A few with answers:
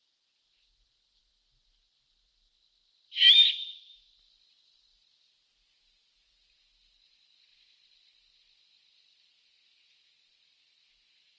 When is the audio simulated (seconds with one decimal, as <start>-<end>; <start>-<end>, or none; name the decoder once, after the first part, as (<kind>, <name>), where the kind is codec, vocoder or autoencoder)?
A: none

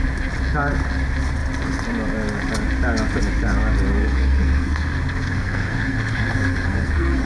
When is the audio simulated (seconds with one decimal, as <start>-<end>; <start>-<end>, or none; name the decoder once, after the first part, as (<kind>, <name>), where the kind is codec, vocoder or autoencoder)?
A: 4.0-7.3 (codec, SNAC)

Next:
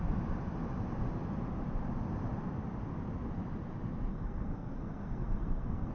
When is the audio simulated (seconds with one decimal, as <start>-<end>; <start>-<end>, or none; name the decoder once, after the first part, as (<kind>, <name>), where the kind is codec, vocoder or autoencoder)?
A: 4.1-5.9 (codec, SNAC)

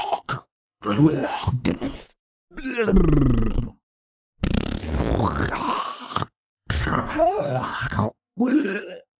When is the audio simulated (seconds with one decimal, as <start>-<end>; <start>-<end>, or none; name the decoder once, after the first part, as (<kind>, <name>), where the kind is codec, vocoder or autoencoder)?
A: 0.0-2.1 (codec, SNAC); 3.5-4.0; 6.0-9.2

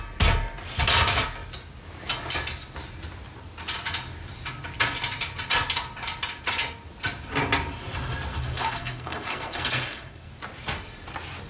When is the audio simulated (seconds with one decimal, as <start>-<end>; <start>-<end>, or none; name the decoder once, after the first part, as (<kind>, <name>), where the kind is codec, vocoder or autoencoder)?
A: 8.3-10.3 (codec, SNAC)

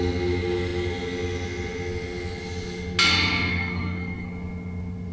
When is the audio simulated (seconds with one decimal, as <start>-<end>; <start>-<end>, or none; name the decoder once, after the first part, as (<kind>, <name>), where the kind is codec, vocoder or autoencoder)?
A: 3.5-4.3 (codec, SNAC)

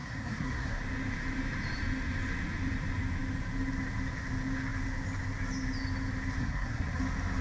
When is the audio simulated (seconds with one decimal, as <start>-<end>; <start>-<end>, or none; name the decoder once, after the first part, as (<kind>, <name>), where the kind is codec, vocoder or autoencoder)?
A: 0.0-0.8 (codec, SNAC); 6.4-7.0